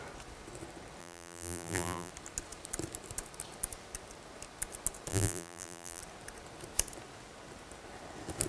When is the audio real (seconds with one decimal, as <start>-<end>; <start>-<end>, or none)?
0.0-1.0; 2.1-5.1; 6.0-8.5